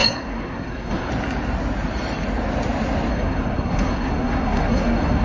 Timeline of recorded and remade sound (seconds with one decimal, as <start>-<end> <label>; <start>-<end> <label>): 0.0-1.1 remade; 1.1-3.1 recorded; 3.1-5.2 remade